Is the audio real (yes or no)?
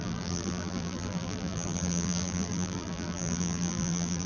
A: no